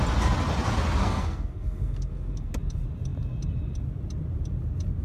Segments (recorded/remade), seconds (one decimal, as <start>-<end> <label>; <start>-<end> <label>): 0.0-1.0 recorded; 1.0-2.5 remade; 2.5-5.0 recorded